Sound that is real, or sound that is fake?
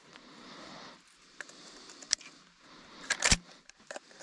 fake